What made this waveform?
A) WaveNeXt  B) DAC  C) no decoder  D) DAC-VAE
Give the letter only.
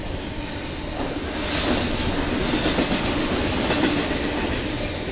C